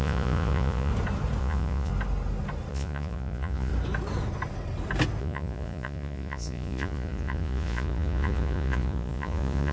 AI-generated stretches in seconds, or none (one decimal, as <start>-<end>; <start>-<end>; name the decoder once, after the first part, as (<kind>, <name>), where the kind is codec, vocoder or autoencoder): 0.0-0.9 (vocoder, Vocos); 1.4-1.9; 2.7-3.7; 5.2-9.7

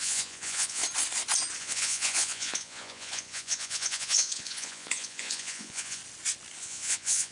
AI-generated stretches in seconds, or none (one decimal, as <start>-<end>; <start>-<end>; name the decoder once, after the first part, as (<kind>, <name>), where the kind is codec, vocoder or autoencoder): 0.0-0.8 (vocoder, Vocos); 1.6-6.0; 6.6-7.3

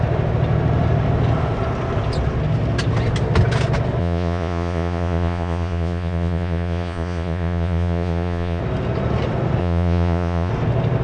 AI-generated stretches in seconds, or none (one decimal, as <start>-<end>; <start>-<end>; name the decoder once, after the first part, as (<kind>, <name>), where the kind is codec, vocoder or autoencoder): 4.0-8.6 (vocoder, Vocos); 9.6-10.5

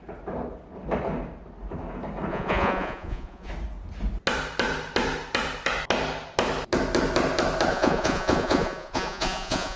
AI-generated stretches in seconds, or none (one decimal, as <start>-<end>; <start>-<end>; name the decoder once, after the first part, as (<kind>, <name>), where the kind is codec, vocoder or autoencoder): 2.3-3.5 (vocoder, Vocos); 7.7-9.8

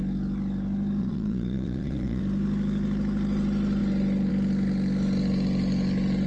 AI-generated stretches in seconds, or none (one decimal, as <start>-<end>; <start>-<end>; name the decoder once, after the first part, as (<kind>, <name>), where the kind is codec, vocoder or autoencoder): 1.0-2.2 (vocoder, Vocos)

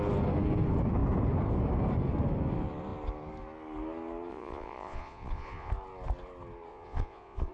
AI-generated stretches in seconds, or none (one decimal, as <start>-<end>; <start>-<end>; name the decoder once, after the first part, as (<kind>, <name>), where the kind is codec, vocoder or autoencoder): 4.3-5.7 (vocoder, Vocos); 6.7-7.5

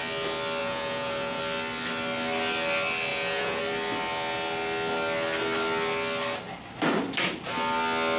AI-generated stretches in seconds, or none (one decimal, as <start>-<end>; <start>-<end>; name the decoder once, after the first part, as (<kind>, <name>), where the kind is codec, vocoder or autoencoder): 0.6-1.4 (vocoder, Vocos); 3.1-3.6

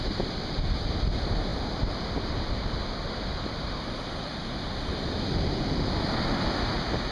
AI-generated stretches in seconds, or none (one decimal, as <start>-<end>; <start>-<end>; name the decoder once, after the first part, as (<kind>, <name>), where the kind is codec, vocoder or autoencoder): none